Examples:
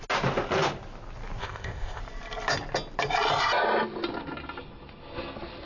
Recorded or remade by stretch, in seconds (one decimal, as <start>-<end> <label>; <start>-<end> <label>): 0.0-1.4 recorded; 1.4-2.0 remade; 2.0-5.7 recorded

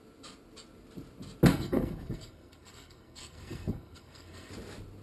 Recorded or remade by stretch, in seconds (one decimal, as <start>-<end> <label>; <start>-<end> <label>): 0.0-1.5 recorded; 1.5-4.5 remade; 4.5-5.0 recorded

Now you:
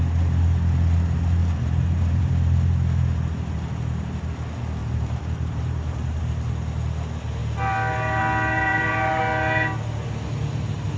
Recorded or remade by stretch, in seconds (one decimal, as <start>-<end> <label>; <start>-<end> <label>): 0.0-1.4 recorded; 1.4-2.3 remade; 2.3-4.8 recorded; 4.8-6.2 remade; 6.2-8.7 recorded; 8.7-9.2 remade; 9.2-11.0 recorded

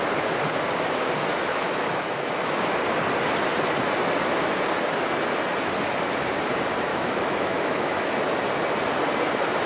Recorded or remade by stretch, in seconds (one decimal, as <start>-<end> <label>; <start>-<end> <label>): 0.0-1.3 recorded; 1.3-2.7 remade; 2.7-6.9 recorded; 6.9-8.1 remade; 8.1-9.7 recorded